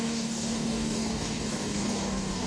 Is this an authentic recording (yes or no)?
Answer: no